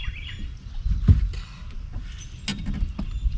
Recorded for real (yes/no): yes